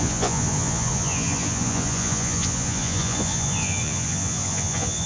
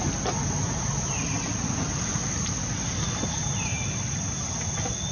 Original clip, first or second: second